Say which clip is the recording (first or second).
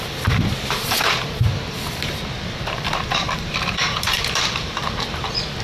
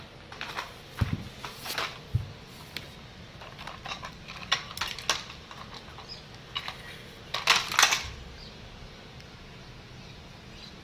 second